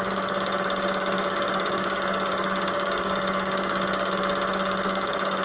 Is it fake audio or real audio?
fake